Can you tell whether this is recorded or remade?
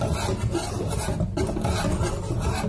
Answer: recorded